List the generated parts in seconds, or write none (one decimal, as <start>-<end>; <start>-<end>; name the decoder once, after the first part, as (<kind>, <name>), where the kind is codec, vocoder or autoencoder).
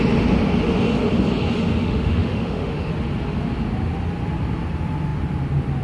1.8-2.9 (autoencoder, DAC-VAE)